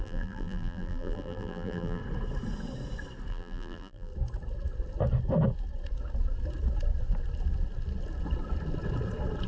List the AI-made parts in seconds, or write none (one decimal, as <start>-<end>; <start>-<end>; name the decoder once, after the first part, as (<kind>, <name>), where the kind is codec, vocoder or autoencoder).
0.0-2.0 (vocoder, BigVGAN v2); 3.3-4.1